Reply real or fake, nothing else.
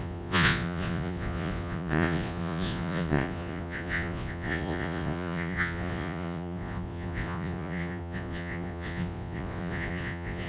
fake